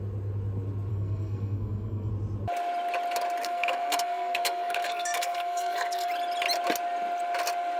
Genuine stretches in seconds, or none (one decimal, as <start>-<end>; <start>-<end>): 0.0-0.9; 2.1-3.4; 6.1-7.8